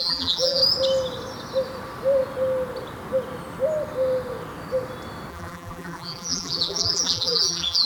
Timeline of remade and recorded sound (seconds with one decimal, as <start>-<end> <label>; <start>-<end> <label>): 0.0-0.6 remade; 0.6-5.3 recorded; 5.3-7.9 remade